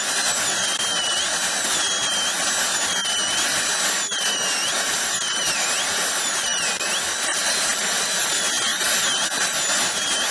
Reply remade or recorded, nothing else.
recorded